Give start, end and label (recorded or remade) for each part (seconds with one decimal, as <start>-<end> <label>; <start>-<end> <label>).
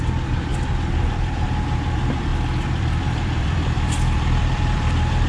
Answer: 0.0-2.3 remade; 2.3-2.8 recorded; 2.8-5.3 remade